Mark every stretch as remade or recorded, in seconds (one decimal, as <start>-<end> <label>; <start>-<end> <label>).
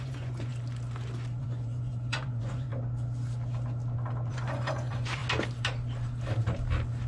0.0-0.5 remade; 0.5-1.4 recorded; 1.4-2.7 remade; 2.7-4.3 recorded; 4.3-5.2 remade; 5.2-7.1 recorded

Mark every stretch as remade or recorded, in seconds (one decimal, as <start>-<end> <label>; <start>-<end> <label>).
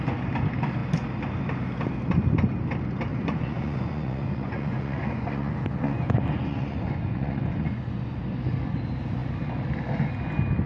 0.0-3.1 recorded; 3.1-8.2 remade; 8.2-10.7 recorded